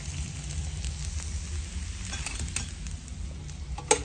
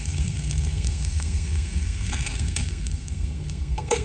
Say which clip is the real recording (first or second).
first